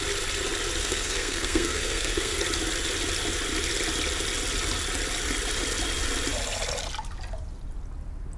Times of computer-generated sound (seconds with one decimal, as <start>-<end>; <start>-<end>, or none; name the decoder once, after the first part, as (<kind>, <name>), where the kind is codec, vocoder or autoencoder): 0.8-2.4 (codec, SNAC)